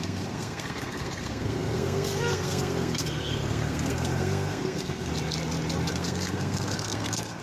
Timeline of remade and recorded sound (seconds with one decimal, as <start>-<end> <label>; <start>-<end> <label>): 0.0-5.1 remade; 5.1-5.9 recorded; 5.9-7.4 remade